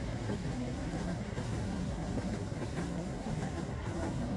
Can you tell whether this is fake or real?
fake